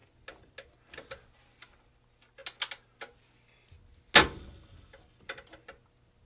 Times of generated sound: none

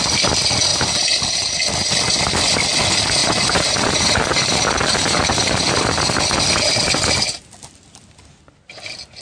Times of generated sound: 0.7-1.5; 3.2-6.2

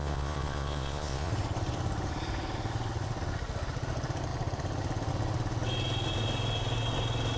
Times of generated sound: 0.0-1.3

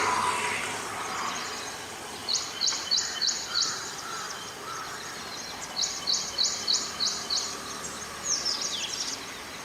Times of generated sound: 2.2-4.8